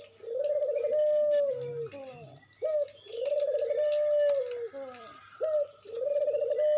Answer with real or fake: real